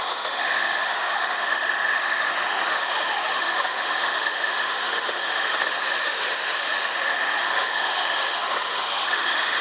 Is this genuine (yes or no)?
no